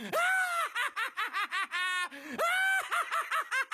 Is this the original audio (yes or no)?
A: yes